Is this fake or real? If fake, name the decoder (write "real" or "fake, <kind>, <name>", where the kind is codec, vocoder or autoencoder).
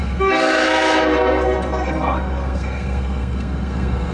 fake, codec, SNAC